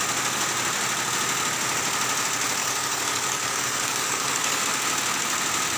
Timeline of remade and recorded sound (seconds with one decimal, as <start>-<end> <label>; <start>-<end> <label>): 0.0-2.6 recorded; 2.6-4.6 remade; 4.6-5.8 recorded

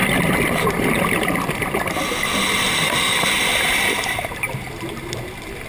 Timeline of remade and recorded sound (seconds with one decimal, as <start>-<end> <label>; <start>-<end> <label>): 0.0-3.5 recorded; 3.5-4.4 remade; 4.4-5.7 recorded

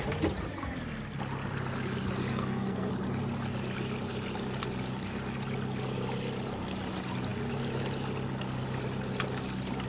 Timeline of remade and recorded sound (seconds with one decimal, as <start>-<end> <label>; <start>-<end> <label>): 0.0-2.3 recorded; 2.3-2.9 remade; 2.9-9.9 recorded